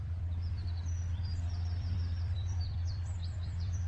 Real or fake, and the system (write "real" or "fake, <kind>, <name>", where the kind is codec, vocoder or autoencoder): fake, vocoder, BigVGAN v2